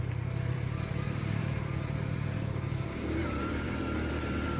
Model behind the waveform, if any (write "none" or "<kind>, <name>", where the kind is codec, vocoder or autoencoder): vocoder, BigVGAN v2